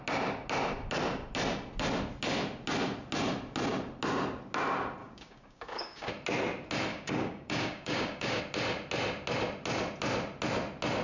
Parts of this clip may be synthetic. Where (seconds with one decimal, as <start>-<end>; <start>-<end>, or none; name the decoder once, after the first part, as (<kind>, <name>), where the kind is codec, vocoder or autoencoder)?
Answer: 5.0-6.1 (codec, DAC); 6.9-8.4